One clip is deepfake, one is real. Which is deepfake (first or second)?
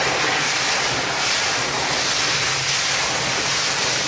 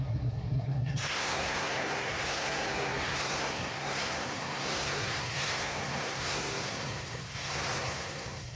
second